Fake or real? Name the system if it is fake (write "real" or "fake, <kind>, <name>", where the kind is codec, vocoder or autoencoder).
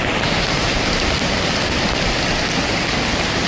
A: real